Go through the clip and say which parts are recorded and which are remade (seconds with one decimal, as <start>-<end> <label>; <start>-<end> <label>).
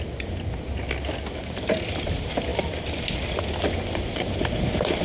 0.0-5.0 recorded